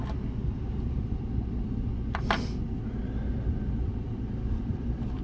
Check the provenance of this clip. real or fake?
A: fake